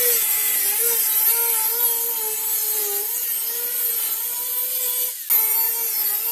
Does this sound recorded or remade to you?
recorded